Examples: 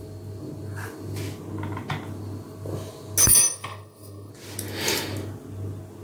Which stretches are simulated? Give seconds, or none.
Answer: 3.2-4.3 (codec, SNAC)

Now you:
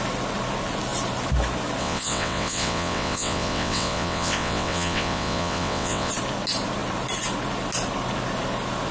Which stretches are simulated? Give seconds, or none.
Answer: 1.8-6.1 (vocoder, WaveNeXt)

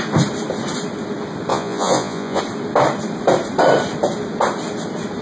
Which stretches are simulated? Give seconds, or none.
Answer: 1.5-2.4 (vocoder, Vocos)

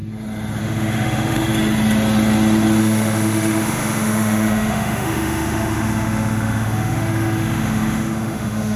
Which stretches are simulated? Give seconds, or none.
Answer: 0.6-1.5 (autoencoder, DAC-VAE); 2.8-8.8

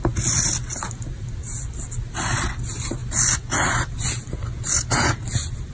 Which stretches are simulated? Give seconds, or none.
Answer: none

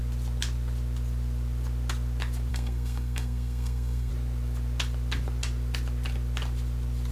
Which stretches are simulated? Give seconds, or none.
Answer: 2.5-4.1 (codec, SNAC)